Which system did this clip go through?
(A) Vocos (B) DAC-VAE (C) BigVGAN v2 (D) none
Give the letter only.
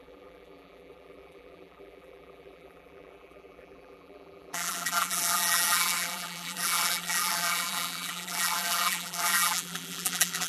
C